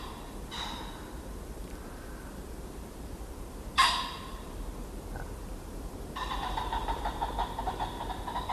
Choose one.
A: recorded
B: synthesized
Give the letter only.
B